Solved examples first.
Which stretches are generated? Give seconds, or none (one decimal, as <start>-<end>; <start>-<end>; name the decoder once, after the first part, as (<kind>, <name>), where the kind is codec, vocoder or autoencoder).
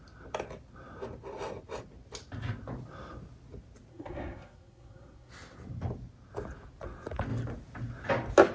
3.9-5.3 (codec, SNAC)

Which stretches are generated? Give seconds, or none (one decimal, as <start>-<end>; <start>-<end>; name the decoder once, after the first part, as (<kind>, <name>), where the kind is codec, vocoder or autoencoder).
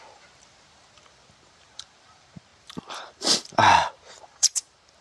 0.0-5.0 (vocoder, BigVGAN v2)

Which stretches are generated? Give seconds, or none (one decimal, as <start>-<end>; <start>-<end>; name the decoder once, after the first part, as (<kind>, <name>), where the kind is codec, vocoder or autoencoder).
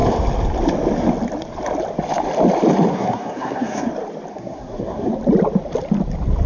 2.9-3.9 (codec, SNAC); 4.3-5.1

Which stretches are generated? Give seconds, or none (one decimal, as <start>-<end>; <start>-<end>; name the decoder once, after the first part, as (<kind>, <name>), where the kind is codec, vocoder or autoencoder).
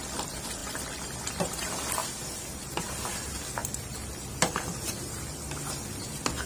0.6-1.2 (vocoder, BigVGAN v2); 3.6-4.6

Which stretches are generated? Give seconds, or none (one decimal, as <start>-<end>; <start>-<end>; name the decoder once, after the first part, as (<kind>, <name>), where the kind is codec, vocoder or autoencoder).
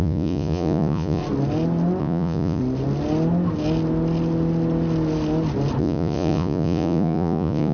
0.0-1.2 (vocoder, Vocos); 2.0-2.6; 5.8-7.7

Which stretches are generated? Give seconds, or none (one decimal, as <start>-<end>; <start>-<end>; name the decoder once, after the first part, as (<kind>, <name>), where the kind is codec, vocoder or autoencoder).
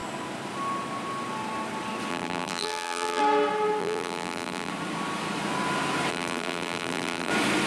2.1-3.2 (vocoder, BigVGAN v2); 3.8-4.7; 6.1-7.3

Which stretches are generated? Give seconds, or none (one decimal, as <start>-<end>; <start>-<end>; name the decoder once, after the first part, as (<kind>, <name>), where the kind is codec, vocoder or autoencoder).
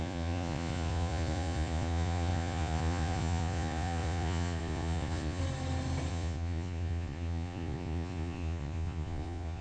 0.0-5.4 (vocoder, Vocos); 6.1-9.6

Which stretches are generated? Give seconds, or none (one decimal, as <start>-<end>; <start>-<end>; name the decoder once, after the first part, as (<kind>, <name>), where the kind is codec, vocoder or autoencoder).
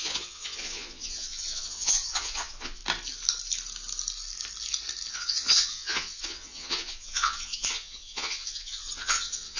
0.0-2.8 (vocoder, Vocos); 5.1-9.6